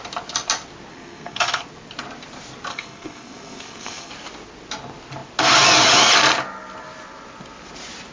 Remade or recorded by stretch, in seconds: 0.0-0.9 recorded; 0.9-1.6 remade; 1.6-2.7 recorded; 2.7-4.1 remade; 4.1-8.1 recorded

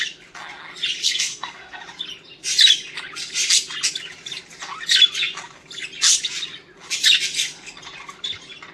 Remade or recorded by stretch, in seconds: 0.0-1.0 recorded; 1.0-1.8 remade; 1.8-8.7 recorded

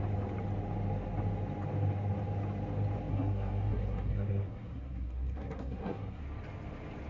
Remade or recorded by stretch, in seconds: 0.0-3.1 recorded; 3.1-6.2 remade; 6.2-7.1 recorded

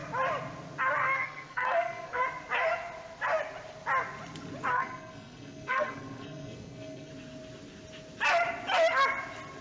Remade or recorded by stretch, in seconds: 0.0-1.0 recorded; 1.0-2.2 remade; 2.2-4.7 recorded; 4.7-7.1 remade; 7.1-9.6 recorded

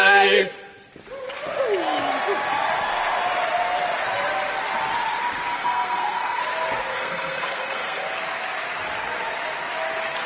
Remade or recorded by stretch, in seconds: 0.0-5.5 recorded; 5.5-6.4 remade; 6.4-6.9 recorded; 6.9-8.0 remade; 8.0-10.3 recorded